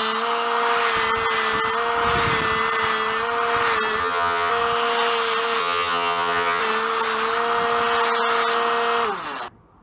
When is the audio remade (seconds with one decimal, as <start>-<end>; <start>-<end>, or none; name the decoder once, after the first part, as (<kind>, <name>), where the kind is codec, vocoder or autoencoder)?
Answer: 4.0-4.5 (vocoder, HiFi-GAN); 5.6-6.6